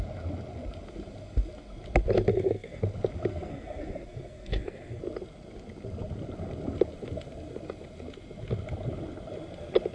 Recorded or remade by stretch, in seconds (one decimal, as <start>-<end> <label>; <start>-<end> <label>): 0.0-2.3 recorded; 2.3-2.8 remade; 2.8-3.3 recorded; 3.3-5.0 remade; 5.0-9.9 recorded